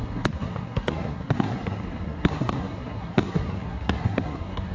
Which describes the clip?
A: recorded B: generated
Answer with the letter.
B